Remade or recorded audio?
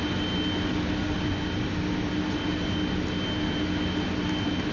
recorded